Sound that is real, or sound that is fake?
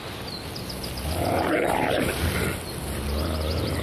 real